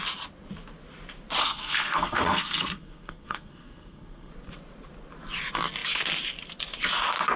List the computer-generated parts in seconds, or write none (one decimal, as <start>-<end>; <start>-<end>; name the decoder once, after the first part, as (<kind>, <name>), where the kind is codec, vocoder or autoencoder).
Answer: 1.4-4.3 (codec, SNAC)